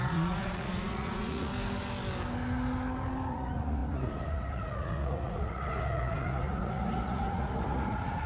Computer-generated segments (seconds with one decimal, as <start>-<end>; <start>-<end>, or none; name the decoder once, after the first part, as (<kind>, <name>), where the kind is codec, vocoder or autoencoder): 0.0-1.5 (vocoder, Vocos); 3.3-8.3